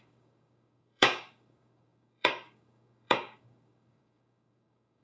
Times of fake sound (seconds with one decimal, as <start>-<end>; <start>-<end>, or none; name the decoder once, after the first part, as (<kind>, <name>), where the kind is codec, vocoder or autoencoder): 0.0-5.0 (codec, DAC)